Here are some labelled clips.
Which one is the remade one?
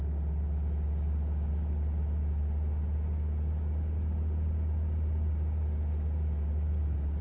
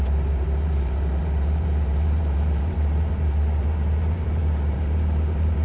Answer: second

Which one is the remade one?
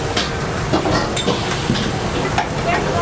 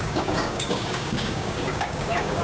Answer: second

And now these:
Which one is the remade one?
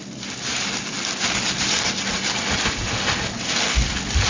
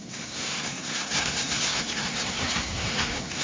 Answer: second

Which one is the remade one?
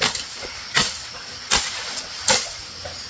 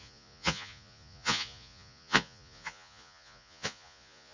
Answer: second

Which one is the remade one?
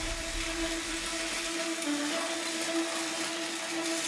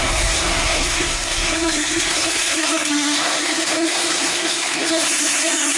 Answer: second